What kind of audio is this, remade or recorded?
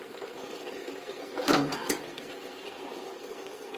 remade